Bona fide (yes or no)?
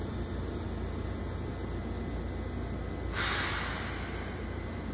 yes